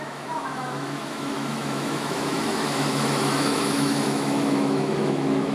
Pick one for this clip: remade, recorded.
remade